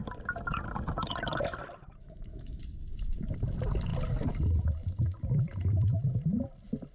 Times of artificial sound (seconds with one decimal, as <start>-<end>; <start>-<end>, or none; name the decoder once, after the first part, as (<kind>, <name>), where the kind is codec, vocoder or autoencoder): 2.0-2.6 (autoencoder, DAC-VAE)